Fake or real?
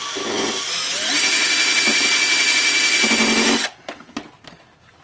real